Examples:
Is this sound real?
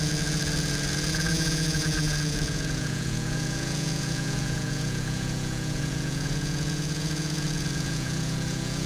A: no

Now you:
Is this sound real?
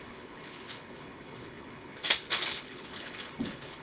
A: no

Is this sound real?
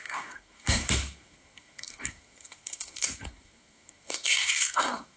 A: no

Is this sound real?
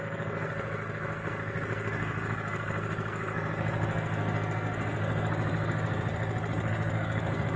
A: no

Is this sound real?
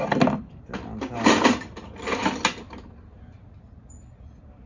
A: yes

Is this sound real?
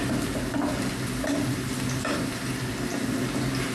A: yes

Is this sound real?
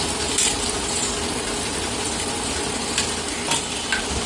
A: yes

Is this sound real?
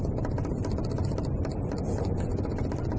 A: yes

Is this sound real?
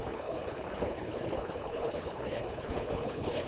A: no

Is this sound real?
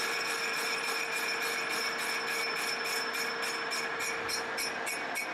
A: yes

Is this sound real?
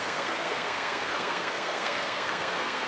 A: no